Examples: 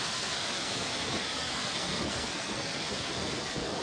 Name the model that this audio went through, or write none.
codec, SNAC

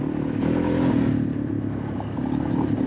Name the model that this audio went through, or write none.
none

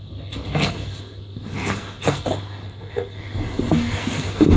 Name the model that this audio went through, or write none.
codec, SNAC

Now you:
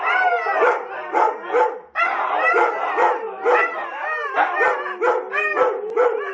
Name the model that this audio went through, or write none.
none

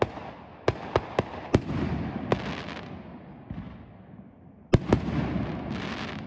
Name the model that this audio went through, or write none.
none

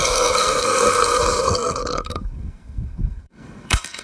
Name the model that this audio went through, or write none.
codec, SNAC